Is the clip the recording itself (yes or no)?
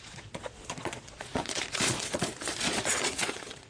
no